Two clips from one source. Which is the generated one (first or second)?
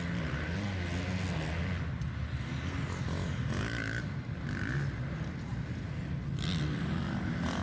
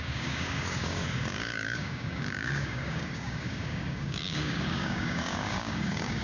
second